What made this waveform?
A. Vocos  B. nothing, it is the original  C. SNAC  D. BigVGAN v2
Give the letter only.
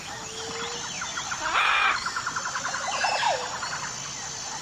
B